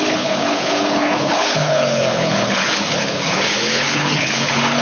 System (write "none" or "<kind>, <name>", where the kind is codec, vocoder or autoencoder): codec, HILCodec